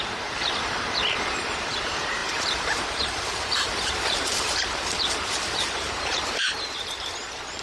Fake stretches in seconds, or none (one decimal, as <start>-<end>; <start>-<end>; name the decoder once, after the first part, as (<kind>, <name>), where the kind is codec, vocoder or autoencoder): 0.0-7.6 (vocoder, BigVGAN v2)